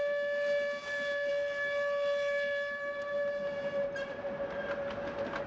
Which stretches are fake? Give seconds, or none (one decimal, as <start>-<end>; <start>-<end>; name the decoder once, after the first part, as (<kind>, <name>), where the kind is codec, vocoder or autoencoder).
none